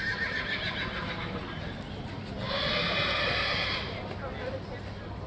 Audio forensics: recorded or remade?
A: recorded